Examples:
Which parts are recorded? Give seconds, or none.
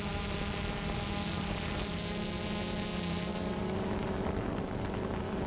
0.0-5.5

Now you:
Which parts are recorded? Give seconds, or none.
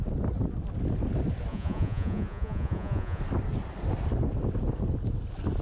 0.0-1.5; 3.2-5.6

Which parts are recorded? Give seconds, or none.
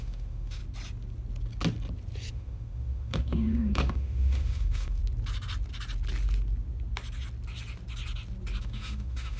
0.6-2.3; 5.0-8.6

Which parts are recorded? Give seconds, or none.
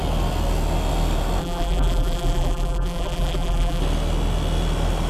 0.0-1.4; 3.8-5.1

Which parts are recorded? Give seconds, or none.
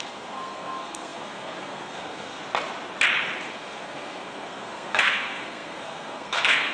2.4-3.5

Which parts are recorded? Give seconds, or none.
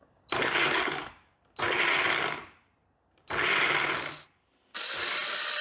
0.0-0.6; 1.4-5.6